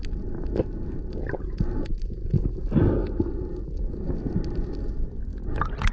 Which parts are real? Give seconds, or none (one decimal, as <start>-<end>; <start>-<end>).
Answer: 0.0-5.9